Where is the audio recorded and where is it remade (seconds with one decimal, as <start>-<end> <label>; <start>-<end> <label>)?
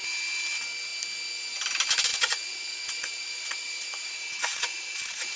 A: 0.0-2.1 recorded; 2.1-5.4 remade